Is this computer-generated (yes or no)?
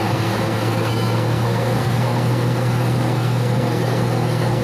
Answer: yes